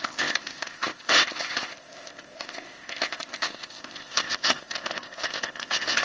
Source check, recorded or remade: remade